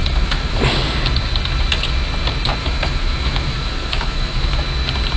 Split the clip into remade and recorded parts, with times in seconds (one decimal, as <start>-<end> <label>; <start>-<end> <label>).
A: 0.0-0.6 remade; 0.6-2.6 recorded; 2.6-4.6 remade; 4.6-5.2 recorded